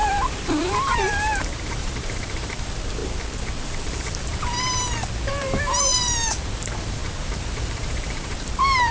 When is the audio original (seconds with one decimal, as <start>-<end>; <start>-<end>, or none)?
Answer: 3.0-5.3; 5.9-6.4